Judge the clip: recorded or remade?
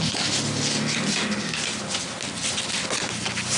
recorded